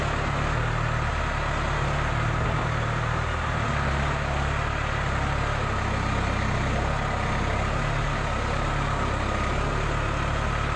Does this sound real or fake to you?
real